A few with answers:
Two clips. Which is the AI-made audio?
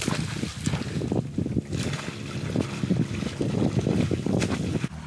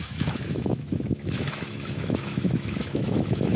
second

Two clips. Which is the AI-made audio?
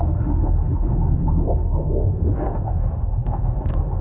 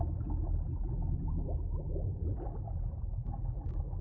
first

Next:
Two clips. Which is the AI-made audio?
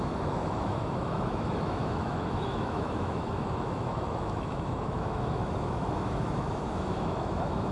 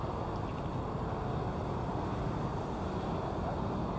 first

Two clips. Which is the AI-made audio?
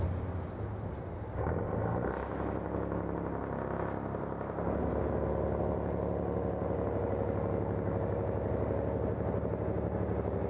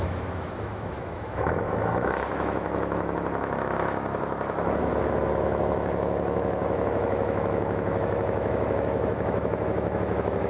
second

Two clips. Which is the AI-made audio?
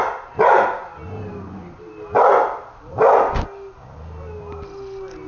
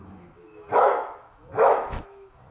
second